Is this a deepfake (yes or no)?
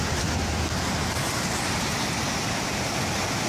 no